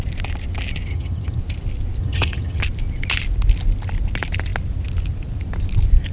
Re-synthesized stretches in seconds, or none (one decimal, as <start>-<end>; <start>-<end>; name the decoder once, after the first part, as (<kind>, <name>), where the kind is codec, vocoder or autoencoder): 0.9-1.4 (vocoder, HiFi-GAN); 2.0-2.6